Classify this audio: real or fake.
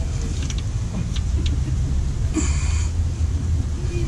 real